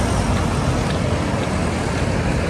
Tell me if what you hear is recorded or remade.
recorded